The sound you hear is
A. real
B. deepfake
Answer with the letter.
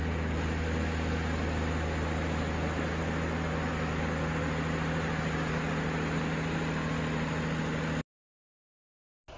A